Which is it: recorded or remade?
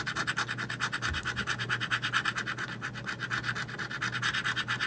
recorded